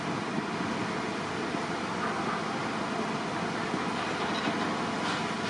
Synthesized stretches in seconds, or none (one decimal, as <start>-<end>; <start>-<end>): none